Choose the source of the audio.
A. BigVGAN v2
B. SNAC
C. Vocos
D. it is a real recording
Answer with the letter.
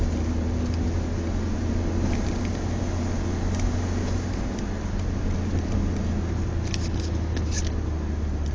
D